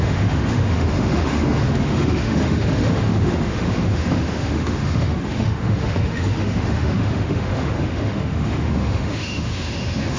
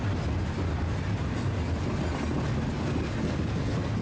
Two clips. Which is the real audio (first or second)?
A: second